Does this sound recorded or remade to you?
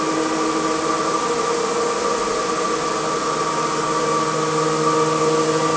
recorded